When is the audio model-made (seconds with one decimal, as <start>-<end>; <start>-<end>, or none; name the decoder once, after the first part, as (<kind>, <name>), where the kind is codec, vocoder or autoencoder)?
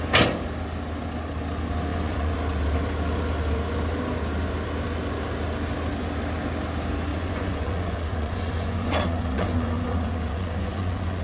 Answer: 1.9-2.4 (vocoder, Vocos); 7.1-11.2